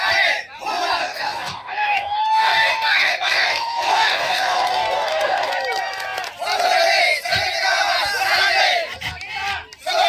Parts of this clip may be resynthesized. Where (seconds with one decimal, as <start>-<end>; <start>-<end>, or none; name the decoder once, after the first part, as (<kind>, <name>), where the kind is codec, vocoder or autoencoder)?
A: 1.0-5.5 (codec, DAC)